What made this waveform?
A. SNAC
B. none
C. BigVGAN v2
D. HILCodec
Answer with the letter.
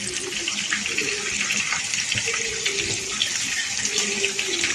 B